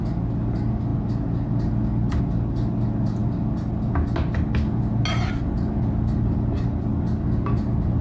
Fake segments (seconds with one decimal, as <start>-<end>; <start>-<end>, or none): none